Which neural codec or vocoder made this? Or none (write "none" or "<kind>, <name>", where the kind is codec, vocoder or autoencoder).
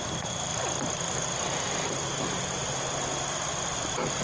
none